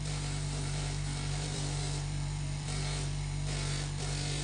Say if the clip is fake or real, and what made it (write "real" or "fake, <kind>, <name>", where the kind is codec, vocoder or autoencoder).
fake, vocoder, BigVGAN v2